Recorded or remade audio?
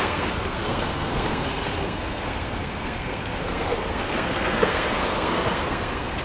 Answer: remade